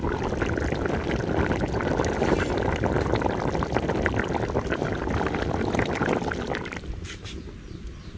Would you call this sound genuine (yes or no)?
yes